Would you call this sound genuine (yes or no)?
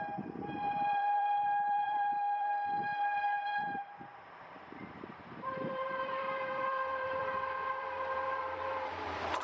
no